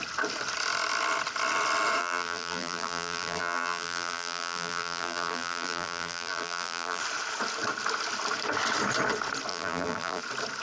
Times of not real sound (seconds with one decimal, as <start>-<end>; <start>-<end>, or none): 2.0-7.0; 9.5-10.2

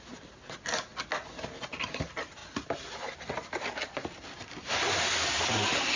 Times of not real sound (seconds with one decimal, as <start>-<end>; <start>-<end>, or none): none

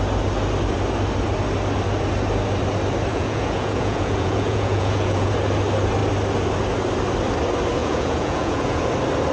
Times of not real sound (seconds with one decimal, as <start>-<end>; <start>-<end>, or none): 3.1-5.3; 7.8-8.9

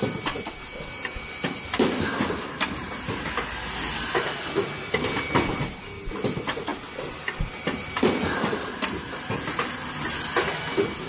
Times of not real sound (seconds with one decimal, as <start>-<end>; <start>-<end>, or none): none

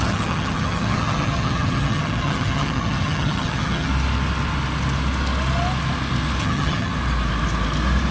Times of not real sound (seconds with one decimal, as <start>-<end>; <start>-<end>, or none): 0.0-3.9; 6.4-6.9

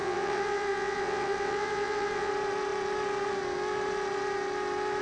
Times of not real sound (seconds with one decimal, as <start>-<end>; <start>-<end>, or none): 0.0-2.3

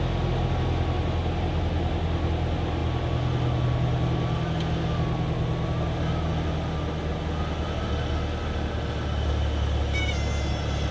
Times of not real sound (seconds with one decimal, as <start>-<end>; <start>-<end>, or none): none

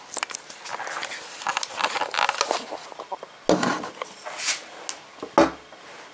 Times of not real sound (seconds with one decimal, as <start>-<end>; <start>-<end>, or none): none